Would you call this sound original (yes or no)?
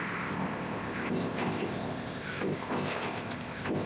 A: no